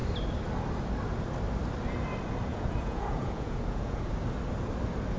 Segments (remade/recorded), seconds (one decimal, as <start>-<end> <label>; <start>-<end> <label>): 0.0-2.5 recorded; 2.5-4.1 remade; 4.1-5.2 recorded